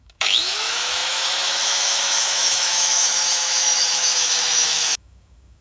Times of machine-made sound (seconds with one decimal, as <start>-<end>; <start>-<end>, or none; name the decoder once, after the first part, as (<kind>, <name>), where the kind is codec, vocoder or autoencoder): 0.0-5.6 (autoencoder, DAC-VAE)